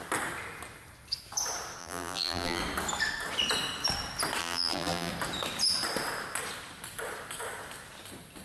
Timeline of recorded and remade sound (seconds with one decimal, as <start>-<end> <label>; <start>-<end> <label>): 0.0-1.8 recorded; 1.8-2.6 remade; 2.6-4.4 recorded; 4.4-5.1 remade; 5.1-8.4 recorded